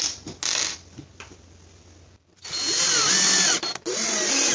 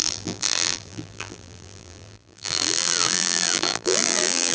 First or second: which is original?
first